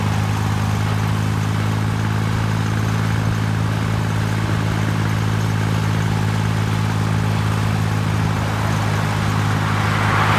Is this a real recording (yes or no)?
yes